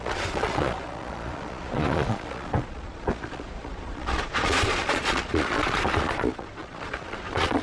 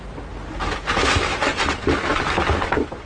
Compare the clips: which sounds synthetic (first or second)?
first